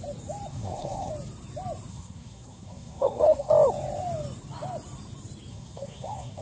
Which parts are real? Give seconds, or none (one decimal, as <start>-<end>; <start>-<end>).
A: 0.0-0.5; 1.1-1.9; 3.5-5.5